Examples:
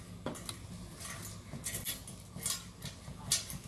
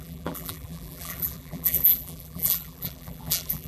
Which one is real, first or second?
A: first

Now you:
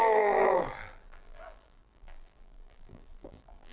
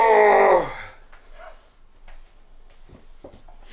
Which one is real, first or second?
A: second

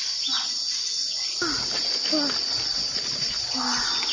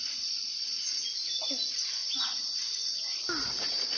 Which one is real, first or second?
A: first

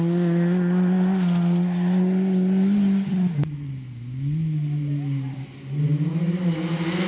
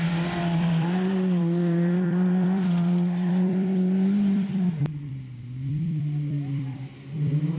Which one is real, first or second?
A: first